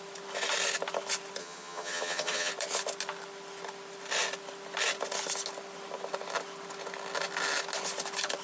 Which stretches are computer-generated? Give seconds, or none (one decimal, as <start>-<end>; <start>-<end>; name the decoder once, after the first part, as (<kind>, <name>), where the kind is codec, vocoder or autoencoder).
1.4-2.5 (vocoder, HiFi-GAN)